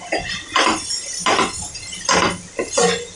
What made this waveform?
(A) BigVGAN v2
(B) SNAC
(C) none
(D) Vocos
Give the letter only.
C